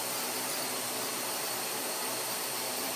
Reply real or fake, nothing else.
fake